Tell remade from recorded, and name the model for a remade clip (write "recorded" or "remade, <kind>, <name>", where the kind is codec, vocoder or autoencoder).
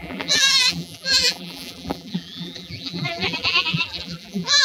remade, vocoder, BigVGAN v2